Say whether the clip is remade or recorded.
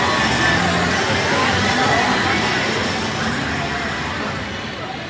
recorded